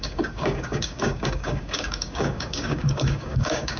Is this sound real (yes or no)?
no